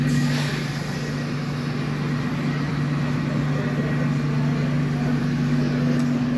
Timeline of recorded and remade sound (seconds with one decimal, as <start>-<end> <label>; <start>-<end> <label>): 0.0-0.5 remade; 0.5-2.3 recorded; 2.3-2.7 remade; 2.7-5.2 recorded; 5.2-6.4 remade